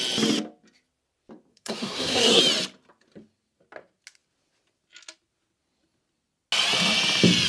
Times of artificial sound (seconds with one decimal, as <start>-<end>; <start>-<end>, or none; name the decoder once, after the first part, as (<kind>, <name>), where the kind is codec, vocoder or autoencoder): 1.5-2.4 (codec, SNAC)